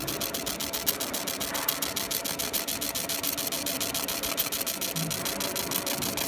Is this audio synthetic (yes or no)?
no